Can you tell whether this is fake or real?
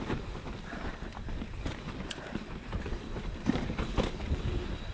fake